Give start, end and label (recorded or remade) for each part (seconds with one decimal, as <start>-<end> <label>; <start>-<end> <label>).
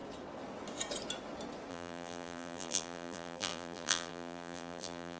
0.0-1.7 recorded; 1.7-5.2 remade